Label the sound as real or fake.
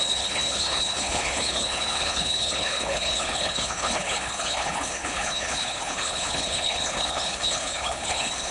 fake